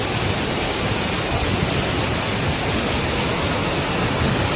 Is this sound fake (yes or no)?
no